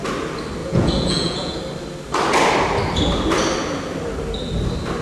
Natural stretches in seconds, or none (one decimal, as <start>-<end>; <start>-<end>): 0.0-0.6; 1.6-5.0